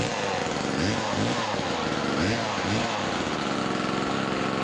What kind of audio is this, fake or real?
real